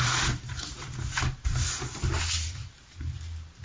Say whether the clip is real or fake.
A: fake